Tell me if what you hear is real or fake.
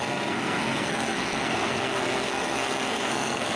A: fake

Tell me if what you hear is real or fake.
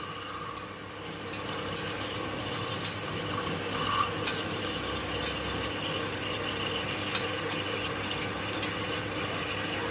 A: real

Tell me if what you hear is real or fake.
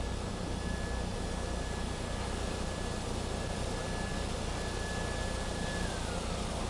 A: real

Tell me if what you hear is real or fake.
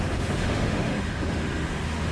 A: fake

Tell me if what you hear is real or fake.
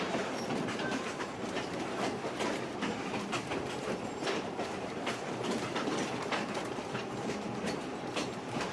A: fake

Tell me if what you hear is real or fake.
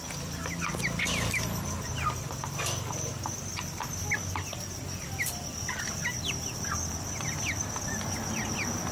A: real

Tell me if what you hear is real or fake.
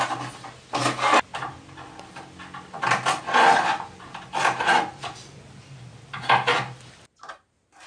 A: real